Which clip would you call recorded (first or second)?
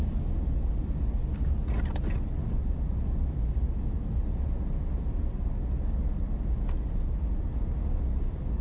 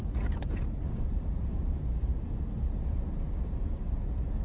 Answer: first